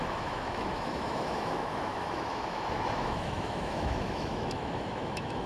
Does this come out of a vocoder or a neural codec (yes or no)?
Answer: yes